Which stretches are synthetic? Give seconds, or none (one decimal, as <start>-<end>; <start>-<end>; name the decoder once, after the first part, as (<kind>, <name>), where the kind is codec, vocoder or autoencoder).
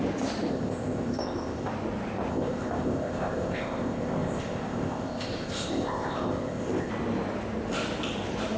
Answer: 0.5-1.7 (codec, ZipCodec); 2.3-6.9